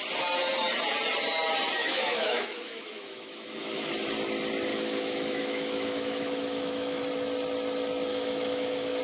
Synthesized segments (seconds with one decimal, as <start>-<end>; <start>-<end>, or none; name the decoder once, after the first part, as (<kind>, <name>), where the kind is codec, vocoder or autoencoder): 1.8-3.9 (autoencoder, DAC-VAE); 4.7-7.0; 8.1-9.0